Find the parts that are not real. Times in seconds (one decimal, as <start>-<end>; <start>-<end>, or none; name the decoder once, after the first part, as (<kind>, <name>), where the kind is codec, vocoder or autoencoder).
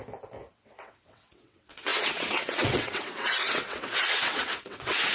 0.5-5.1 (vocoder, WaveNeXt)